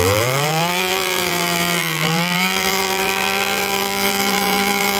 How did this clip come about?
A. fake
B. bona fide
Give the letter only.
A